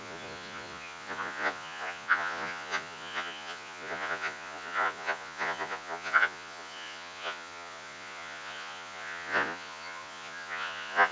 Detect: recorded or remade remade